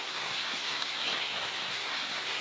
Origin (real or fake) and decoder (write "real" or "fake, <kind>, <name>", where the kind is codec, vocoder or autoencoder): fake, codec, SNAC